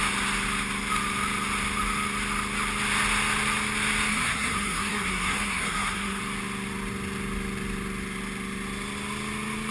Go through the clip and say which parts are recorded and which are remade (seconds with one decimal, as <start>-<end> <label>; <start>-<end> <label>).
0.0-4.1 recorded; 4.1-6.2 remade; 6.2-9.7 recorded

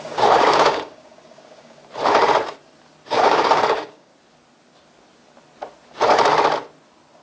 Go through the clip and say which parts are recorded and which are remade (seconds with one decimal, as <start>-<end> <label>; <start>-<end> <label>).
0.0-1.8 remade; 1.8-3.1 recorded; 3.1-4.1 remade; 4.1-7.2 recorded

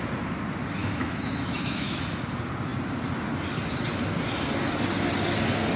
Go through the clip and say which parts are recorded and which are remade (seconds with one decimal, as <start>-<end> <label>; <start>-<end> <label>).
0.0-0.8 recorded; 0.8-2.0 remade; 2.0-5.8 recorded